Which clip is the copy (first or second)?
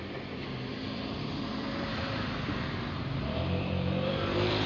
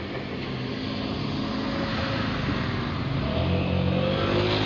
first